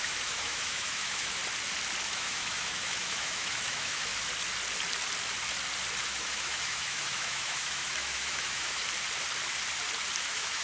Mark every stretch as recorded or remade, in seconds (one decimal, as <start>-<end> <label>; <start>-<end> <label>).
0.0-1.4 remade; 1.4-2.0 recorded; 2.0-4.1 remade; 4.1-6.0 recorded; 6.0-8.8 remade; 8.8-10.2 recorded; 10.2-10.6 remade

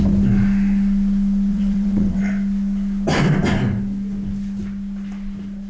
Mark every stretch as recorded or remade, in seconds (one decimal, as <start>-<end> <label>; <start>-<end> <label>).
0.0-1.5 recorded; 1.5-2.2 remade; 2.2-5.7 recorded

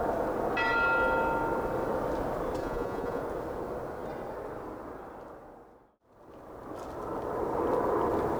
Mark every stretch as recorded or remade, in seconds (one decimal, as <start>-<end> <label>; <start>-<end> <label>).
0.0-2.6 recorded; 2.6-3.2 remade; 3.2-8.4 recorded

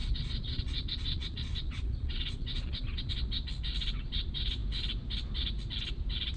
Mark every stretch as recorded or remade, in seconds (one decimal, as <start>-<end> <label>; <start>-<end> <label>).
0.0-3.1 remade; 3.1-6.4 recorded

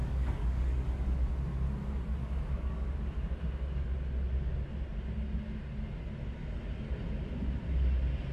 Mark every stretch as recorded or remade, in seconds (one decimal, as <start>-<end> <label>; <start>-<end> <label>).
0.0-1.3 remade; 1.3-2.2 recorded; 2.2-2.9 remade; 2.9-8.3 recorded

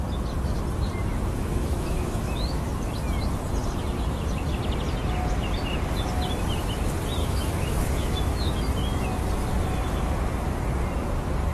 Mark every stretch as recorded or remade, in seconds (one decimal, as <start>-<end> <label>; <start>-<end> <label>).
0.0-1.1 recorded; 1.1-2.7 remade; 2.7-7.2 recorded; 7.2-8.6 remade; 8.6-11.5 recorded

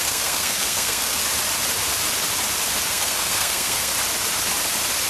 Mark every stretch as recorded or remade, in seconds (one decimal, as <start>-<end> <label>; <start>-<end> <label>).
0.0-1.2 remade; 1.2-2.9 recorded; 2.9-3.9 remade; 3.9-5.1 recorded